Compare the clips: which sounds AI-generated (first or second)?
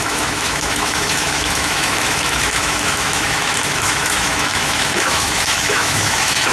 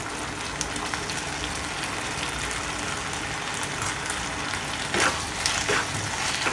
first